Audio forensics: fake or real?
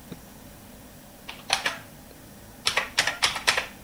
fake